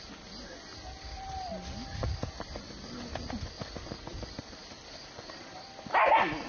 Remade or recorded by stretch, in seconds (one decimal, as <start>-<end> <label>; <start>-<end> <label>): 0.0-6.5 recorded